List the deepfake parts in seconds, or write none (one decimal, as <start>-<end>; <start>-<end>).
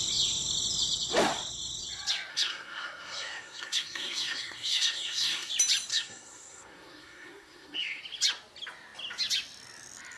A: 2.3-5.5; 5.9-8.0